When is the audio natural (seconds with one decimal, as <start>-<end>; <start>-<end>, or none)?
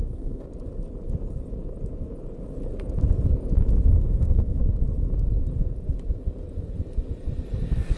0.5-4.0; 4.6-8.0